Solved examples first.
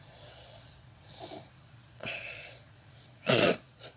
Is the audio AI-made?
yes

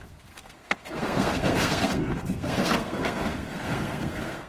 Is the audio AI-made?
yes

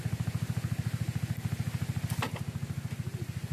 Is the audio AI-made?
no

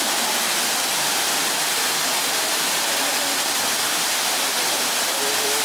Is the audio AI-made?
no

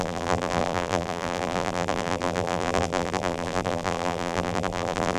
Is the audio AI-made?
yes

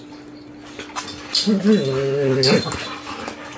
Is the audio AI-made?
no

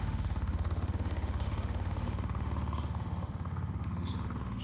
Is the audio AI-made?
yes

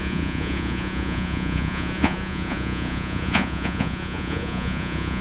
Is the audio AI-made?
yes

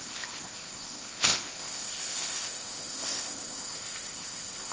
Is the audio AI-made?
yes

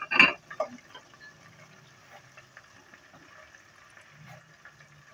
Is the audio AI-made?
no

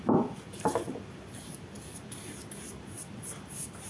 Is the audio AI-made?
no